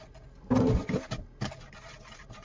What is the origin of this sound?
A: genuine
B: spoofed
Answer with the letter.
A